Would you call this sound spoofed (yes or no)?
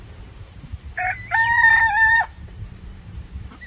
yes